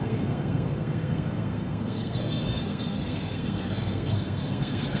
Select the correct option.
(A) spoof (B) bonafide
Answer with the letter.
A